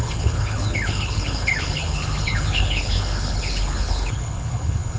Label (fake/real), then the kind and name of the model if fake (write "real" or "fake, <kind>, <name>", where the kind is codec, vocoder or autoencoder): fake, codec, HILCodec